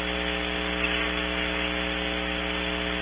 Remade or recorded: recorded